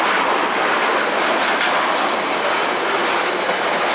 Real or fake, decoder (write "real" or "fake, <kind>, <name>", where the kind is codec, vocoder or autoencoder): real